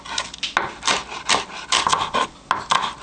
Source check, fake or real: real